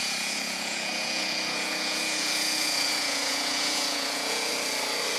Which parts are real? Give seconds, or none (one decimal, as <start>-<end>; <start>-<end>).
4.5-5.2